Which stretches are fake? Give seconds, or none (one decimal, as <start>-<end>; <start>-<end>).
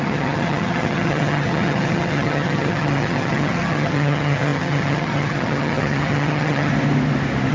0.0-6.7